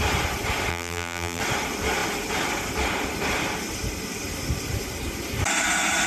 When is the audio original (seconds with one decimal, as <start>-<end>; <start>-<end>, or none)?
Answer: 0.0-0.7; 1.4-6.1